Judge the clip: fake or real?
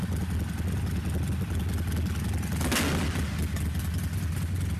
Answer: real